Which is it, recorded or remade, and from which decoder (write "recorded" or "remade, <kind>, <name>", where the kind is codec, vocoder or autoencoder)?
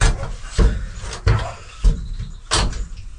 recorded